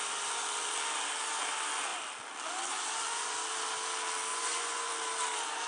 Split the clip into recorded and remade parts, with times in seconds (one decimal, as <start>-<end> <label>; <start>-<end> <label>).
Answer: 0.0-4.3 recorded; 4.3-4.9 remade; 4.9-5.7 recorded